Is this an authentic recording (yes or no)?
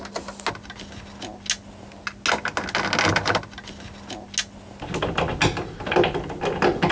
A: yes